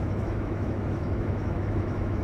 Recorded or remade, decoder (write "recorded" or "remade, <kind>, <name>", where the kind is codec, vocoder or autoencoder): remade, autoencoder, DAC-VAE